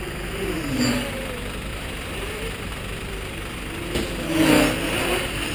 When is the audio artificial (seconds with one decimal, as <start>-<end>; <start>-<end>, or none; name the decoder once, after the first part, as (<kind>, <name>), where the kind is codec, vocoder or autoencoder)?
1.7-2.7 (vocoder, BigVGAN v2)